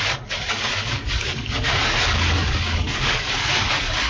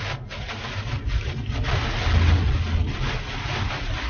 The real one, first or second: second